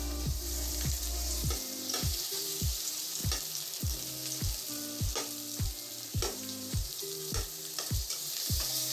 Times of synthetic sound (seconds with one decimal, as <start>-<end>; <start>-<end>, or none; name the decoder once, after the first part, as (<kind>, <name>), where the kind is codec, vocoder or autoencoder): 0.0-3.2 (vocoder, BigVGAN v2); 6.1-8.9